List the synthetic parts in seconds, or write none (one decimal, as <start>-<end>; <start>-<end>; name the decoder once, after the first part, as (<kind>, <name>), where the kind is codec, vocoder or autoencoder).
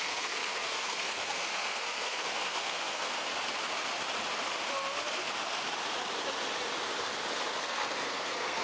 0.0-3.3 (codec, SNAC); 7.6-8.6